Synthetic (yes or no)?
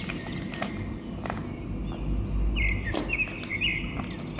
no